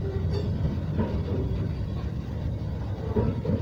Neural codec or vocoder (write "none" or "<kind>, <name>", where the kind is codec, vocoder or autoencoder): none